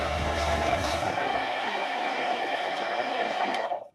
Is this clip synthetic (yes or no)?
yes